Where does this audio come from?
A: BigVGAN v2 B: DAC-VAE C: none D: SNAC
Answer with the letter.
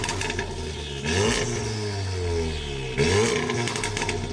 C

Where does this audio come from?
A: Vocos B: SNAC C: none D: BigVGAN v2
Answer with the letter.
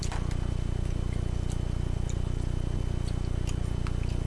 C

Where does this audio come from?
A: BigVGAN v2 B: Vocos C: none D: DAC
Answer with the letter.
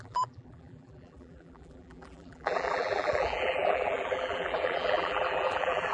A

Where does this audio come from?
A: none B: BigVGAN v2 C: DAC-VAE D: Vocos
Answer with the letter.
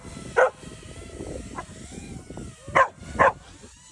A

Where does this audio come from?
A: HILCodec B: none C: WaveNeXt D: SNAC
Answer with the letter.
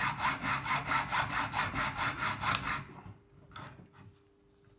B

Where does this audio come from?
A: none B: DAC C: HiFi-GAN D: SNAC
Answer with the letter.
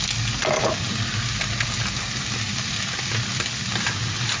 A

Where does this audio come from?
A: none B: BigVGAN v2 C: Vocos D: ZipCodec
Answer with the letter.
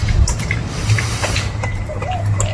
B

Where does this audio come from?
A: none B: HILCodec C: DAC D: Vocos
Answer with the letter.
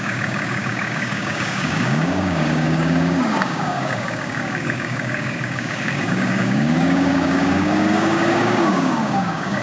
C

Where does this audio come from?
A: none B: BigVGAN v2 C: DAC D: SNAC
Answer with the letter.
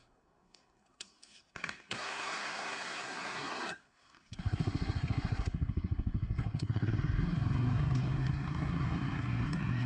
D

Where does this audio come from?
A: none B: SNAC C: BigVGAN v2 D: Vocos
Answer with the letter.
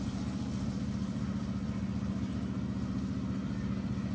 A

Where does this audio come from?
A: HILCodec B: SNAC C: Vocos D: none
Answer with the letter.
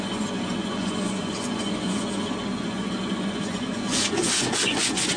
C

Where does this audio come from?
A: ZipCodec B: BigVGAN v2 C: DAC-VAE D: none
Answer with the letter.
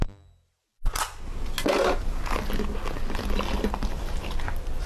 D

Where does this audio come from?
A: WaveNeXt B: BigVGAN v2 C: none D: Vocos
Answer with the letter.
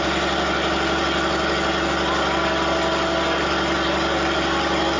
C